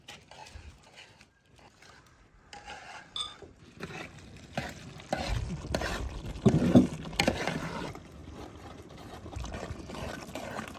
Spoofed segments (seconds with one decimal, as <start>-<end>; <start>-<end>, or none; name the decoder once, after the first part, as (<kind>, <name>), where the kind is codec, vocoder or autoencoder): none